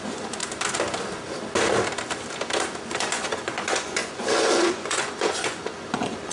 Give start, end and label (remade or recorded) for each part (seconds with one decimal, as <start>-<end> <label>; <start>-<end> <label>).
0.0-0.4 remade; 0.4-2.8 recorded; 2.8-6.3 remade